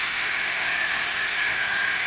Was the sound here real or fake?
fake